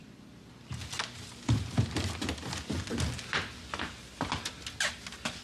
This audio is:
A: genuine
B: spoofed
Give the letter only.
A